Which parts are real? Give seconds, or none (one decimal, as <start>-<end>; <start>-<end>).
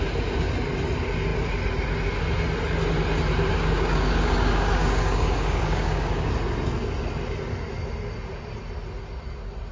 0.0-3.5; 6.3-9.7